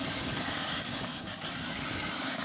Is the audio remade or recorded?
remade